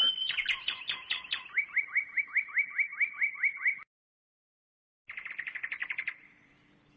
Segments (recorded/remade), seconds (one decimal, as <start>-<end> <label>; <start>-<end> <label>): 0.0-2.9 recorded; 2.9-4.0 remade; 4.0-5.8 recorded; 5.8-7.0 remade